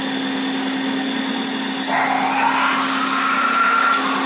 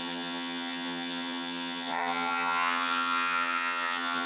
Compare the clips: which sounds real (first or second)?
first